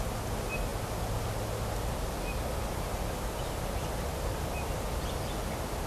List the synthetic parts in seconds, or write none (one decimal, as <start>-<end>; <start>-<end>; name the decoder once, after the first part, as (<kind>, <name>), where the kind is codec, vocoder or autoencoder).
none